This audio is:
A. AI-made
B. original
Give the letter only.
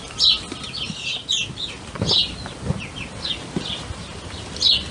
B